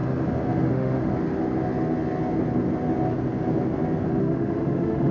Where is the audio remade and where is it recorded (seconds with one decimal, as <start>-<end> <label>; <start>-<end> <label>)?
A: 0.0-0.7 recorded; 0.7-1.1 remade; 1.1-4.2 recorded; 4.2-5.1 remade

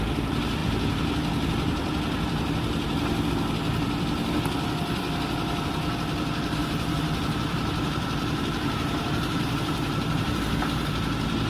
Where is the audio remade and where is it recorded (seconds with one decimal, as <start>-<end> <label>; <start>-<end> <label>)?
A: 0.0-6.6 recorded; 6.6-10.4 remade; 10.4-11.5 recorded

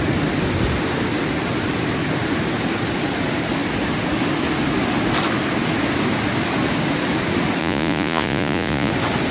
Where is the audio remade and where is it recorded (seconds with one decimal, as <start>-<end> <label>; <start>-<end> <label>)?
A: 0.0-7.6 recorded; 7.6-8.9 remade; 8.9-9.3 recorded

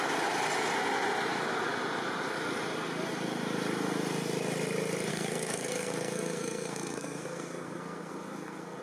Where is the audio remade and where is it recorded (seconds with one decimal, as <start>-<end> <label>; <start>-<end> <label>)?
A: 0.0-5.1 recorded; 5.1-8.8 remade

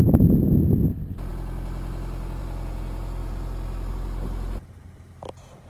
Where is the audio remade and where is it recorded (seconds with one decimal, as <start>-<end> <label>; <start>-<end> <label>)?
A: 0.0-5.7 recorded

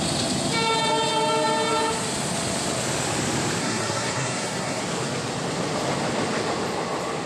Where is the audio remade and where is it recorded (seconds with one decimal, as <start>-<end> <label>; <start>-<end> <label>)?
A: 0.0-3.6 recorded; 3.6-4.8 remade; 4.8-7.3 recorded